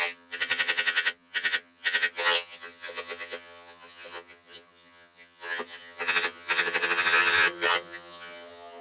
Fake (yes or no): yes